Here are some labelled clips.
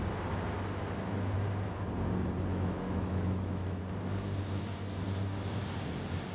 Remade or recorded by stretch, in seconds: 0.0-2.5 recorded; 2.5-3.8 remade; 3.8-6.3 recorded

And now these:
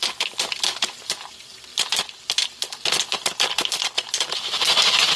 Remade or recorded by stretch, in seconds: 0.0-5.2 recorded

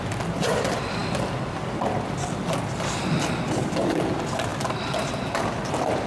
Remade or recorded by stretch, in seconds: 0.0-1.0 recorded; 1.0-1.8 remade; 1.8-6.1 recorded

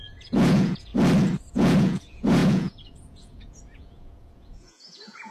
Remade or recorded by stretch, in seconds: 0.0-0.9 remade; 0.9-1.5 recorded; 1.5-5.3 remade

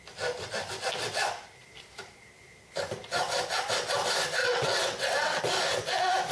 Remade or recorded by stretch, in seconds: 0.0-4.4 recorded; 4.4-5.4 remade; 5.4-6.3 recorded

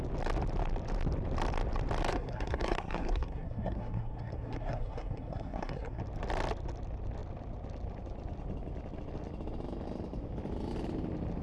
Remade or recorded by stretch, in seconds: 0.0-2.1 recorded; 2.1-6.0 remade; 6.0-11.4 recorded

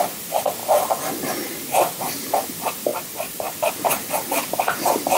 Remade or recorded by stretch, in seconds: 0.0-2.9 recorded; 2.9-3.7 remade; 3.7-5.2 recorded